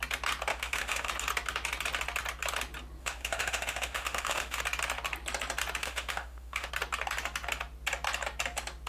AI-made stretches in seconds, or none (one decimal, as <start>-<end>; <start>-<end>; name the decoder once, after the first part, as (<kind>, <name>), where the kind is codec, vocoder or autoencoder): 0.5-1.1 (autoencoder, DAC-VAE); 3.0-4.6; 5.8-6.7